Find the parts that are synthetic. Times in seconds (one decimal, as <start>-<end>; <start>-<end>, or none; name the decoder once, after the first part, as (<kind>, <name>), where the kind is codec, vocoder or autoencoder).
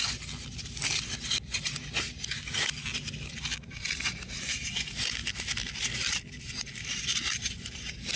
3.3-5.2 (vocoder, BigVGAN v2); 6.4-8.2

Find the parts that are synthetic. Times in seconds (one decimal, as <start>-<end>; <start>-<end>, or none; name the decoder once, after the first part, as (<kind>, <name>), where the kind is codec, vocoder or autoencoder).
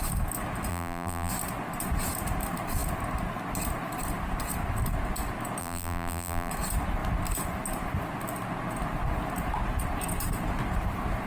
0.7-1.3 (vocoder, BigVGAN v2); 5.6-6.5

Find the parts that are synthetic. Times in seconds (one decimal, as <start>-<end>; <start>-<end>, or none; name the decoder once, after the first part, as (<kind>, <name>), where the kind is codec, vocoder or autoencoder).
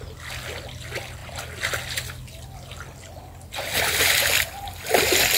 none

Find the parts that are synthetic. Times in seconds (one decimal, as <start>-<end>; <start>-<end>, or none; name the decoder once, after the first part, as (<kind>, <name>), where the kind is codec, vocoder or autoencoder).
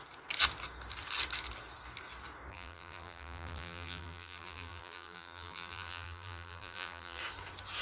2.5-7.2 (vocoder, BigVGAN v2)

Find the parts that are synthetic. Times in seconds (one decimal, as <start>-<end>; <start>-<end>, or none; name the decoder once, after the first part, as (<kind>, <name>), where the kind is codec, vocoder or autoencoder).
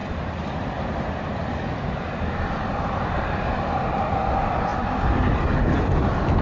0.0-3.5 (vocoder, BigVGAN v2)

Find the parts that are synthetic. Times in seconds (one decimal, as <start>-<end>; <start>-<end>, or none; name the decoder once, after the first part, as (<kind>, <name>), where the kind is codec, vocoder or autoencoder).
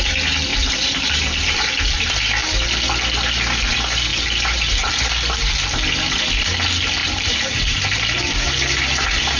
0.5-2.0 (vocoder, BigVGAN v2); 4.1-4.9; 7.0-9.4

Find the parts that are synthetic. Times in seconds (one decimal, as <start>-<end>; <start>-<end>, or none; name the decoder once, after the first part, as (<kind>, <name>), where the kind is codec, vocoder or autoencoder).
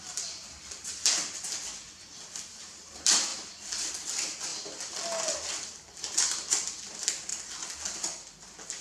0.0-1.8 (vocoder, BigVGAN v2); 2.6-3.3; 3.9-7.3; 8.0-8.8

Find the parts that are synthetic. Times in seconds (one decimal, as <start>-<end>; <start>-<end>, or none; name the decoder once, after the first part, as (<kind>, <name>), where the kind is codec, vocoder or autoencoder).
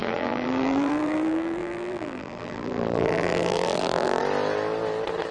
0.0-4.2 (vocoder, BigVGAN v2)